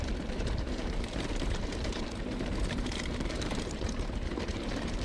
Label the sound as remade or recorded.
remade